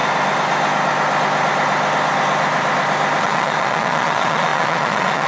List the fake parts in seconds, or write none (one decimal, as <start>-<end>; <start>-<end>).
3.2-5.3